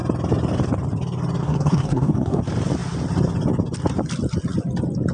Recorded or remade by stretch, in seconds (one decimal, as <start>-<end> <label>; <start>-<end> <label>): 0.0-1.4 recorded; 1.4-2.4 remade; 2.4-5.1 recorded